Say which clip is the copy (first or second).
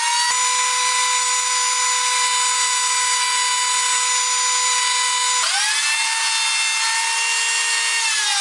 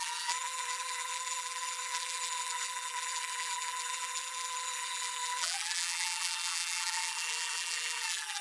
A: second